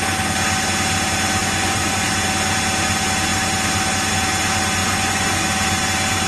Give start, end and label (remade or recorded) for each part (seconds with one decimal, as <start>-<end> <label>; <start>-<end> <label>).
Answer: 0.0-1.4 recorded; 1.4-2.1 remade; 2.1-4.8 recorded; 4.8-5.4 remade; 5.4-6.3 recorded